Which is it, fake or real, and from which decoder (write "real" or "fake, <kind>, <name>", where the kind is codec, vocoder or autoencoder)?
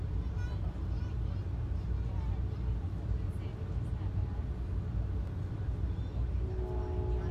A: real